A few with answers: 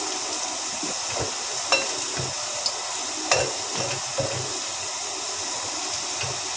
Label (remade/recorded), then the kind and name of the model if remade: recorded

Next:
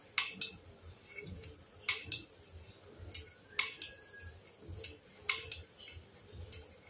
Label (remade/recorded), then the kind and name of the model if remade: recorded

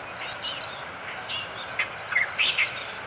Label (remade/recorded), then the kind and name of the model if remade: recorded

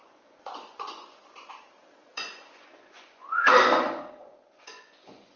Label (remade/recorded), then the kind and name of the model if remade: remade, vocoder, Vocos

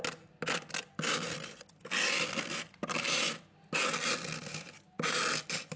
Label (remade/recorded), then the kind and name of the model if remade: recorded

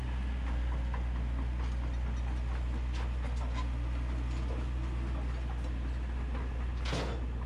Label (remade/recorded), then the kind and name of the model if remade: recorded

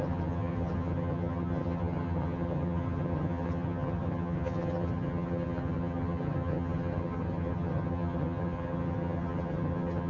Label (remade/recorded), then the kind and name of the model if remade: remade, vocoder, HiFi-GAN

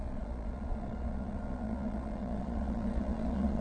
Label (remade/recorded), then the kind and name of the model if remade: remade, vocoder, Vocos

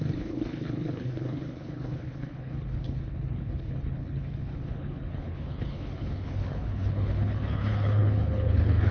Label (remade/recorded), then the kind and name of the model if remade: remade, codec, HILCodec